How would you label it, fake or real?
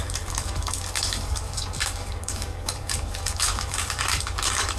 fake